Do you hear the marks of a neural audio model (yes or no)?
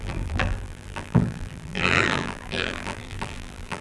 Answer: yes